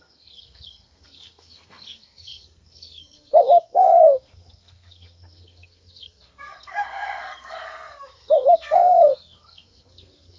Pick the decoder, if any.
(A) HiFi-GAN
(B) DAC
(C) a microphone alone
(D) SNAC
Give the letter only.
D